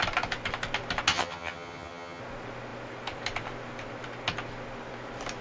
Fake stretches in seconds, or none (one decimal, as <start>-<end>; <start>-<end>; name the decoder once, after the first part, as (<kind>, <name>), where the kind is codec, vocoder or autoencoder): 1.1-2.2 (vocoder, HiFi-GAN)